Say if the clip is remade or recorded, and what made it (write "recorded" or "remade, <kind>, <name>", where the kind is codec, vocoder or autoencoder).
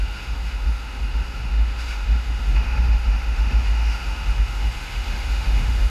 remade, autoencoder, DAC-VAE